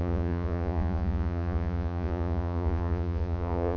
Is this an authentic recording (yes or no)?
no